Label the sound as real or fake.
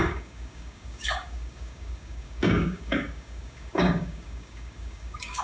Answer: fake